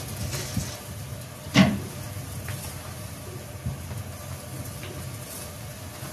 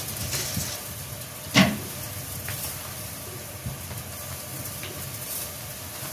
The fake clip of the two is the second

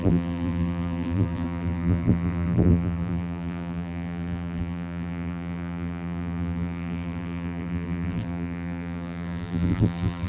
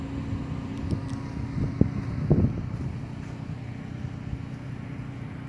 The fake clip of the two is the first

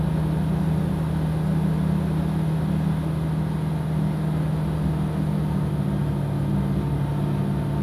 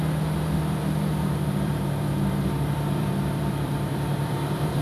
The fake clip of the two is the second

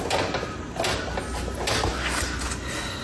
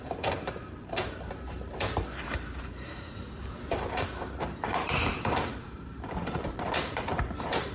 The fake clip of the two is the second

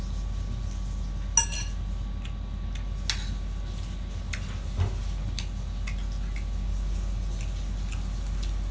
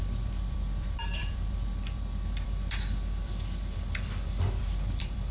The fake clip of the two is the second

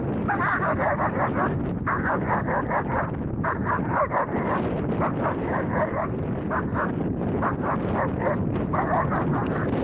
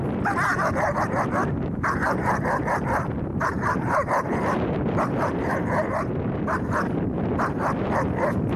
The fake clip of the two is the second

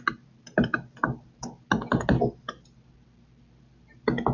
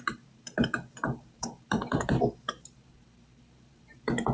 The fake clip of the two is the second